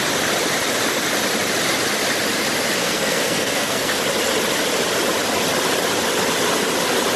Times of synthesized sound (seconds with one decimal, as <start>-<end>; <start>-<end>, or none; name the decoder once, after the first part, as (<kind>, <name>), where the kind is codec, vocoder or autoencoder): 2.8-4.0 (codec, SNAC)